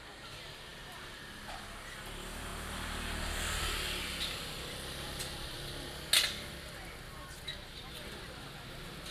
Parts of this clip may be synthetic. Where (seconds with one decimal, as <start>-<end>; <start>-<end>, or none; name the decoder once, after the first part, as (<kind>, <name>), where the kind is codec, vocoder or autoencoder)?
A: none